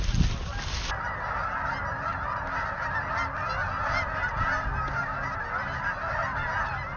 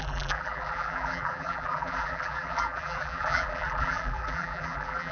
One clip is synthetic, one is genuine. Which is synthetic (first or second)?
second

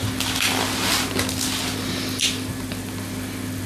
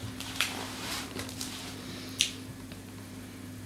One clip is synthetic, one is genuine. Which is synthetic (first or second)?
second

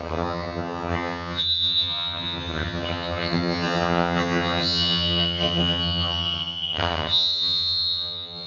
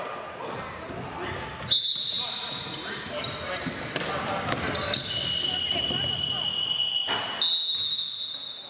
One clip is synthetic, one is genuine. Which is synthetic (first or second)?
first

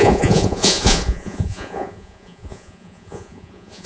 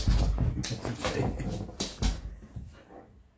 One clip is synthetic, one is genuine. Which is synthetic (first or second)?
first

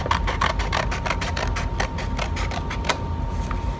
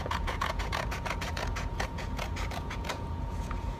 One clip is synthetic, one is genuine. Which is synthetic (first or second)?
second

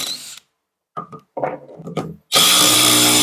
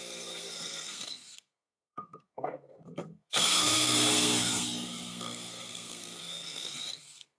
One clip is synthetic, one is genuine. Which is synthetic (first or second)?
second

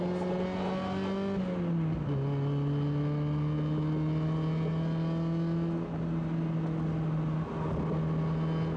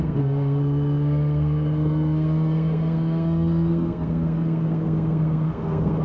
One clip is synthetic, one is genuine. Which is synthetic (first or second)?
second